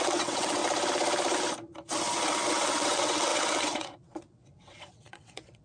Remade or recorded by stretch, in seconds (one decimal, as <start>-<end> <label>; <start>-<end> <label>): 0.0-0.6 remade; 0.6-2.5 recorded; 2.5-5.6 remade